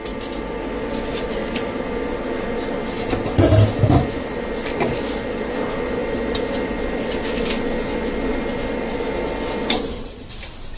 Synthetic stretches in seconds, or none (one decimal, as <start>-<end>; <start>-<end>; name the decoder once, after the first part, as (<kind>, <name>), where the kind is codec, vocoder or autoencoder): none